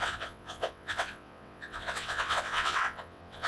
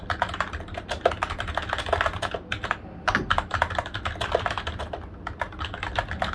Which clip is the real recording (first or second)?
second